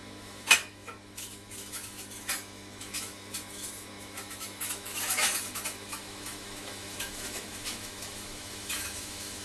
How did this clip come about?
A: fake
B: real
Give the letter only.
A